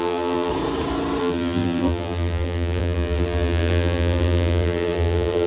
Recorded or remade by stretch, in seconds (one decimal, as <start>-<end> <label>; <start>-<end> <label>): 0.0-0.5 remade; 0.5-1.2 recorded; 1.2-5.5 remade